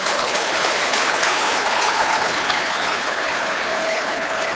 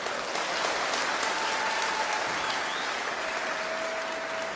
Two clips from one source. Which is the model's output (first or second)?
first